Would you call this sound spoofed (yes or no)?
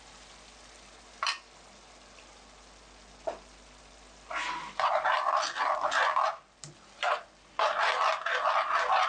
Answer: no